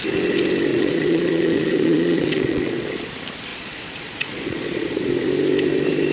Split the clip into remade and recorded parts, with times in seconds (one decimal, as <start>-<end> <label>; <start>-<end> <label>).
0.0-0.7 recorded; 0.7-3.1 remade; 3.1-3.5 recorded; 3.5-5.0 remade; 5.0-6.1 recorded